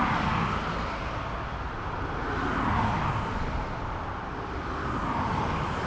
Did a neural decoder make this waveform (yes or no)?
no